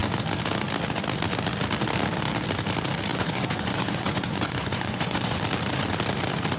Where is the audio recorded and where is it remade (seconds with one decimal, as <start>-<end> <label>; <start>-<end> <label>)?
0.0-3.1 recorded; 3.1-5.4 remade; 5.4-6.6 recorded